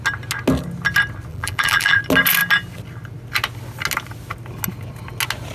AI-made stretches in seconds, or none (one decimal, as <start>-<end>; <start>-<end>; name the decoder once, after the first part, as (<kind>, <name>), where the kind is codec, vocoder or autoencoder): 1.3-2.0 (vocoder, BigVGAN v2)